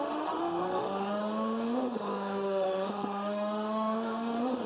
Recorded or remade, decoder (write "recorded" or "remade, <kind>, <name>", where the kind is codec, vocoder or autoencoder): remade, autoencoder, DAC-VAE